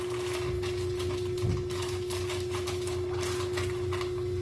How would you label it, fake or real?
real